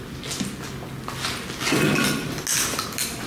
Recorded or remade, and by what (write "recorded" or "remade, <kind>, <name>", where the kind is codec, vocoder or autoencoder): recorded